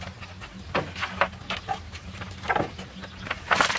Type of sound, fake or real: real